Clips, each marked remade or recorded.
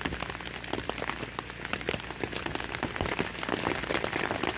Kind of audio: recorded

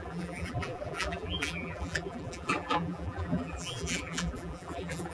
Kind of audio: remade